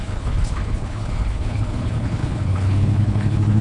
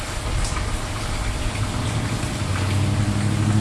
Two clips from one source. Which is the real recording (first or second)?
second